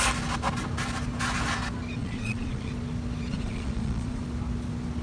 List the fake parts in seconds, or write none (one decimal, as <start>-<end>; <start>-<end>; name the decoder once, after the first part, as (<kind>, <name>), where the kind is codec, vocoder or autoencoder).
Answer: 2.0-2.7 (vocoder, Vocos); 3.3-4.2